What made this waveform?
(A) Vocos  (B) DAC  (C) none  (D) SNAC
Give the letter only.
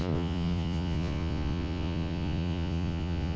A